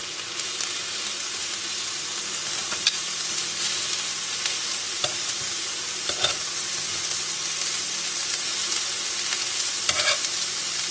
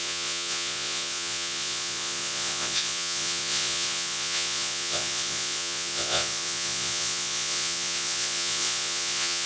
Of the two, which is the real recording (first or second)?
first